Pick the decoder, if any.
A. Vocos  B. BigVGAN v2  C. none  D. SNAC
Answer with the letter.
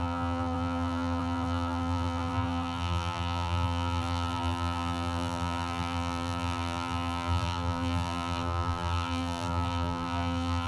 B